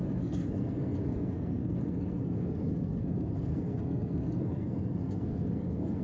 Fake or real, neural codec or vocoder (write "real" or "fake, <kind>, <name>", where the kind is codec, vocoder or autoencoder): fake, codec, SNAC